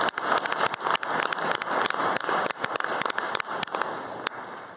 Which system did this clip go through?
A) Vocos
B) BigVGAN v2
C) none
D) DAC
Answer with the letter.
C